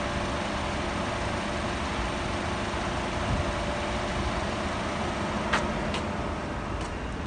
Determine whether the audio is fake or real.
real